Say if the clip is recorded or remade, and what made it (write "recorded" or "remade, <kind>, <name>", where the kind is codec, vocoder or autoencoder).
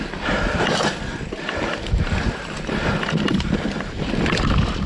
recorded